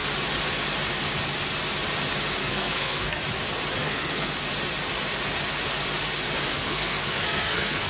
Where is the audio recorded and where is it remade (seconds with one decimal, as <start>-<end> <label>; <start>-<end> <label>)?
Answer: 0.0-2.4 recorded; 2.4-3.2 remade; 3.2-3.8 recorded; 3.8-4.3 remade; 4.3-6.5 recorded; 6.5-7.9 remade